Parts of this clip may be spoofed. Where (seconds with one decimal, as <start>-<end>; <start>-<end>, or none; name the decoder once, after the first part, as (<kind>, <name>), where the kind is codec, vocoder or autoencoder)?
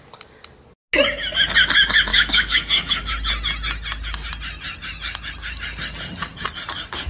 2.1-3.1 (codec, DAC)